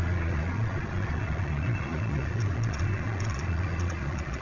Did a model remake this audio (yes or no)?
yes